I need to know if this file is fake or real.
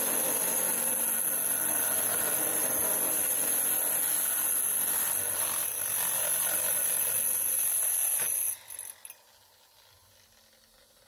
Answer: real